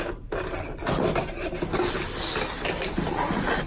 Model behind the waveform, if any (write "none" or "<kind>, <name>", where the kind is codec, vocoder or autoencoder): vocoder, BigVGAN v2